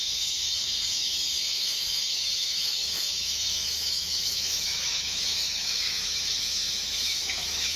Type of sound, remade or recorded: remade